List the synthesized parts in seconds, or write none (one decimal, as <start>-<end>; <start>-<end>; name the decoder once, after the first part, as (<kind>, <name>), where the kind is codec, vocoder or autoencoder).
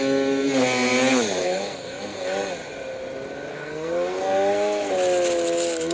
1.4-2.5 (codec, SNAC); 3.5-4.9